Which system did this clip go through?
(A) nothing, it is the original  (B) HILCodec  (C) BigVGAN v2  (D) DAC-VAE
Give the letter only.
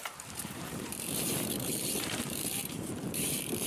C